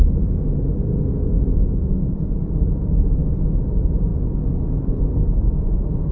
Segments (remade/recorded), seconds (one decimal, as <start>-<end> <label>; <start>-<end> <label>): 0.0-6.1 recorded